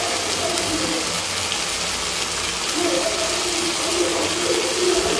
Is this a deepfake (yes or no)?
no